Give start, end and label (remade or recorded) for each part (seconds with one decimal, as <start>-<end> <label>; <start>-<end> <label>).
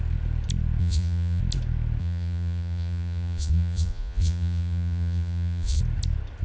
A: 0.0-0.8 recorded; 0.8-1.4 remade; 1.4-2.0 recorded; 2.0-5.8 remade; 5.8-6.4 recorded